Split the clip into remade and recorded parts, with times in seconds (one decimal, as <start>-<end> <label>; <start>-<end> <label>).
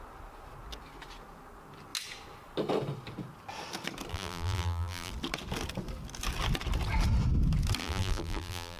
0.0-4.1 recorded; 4.1-5.1 remade; 5.1-7.8 recorded; 7.8-8.8 remade